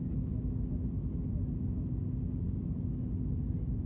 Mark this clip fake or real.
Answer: real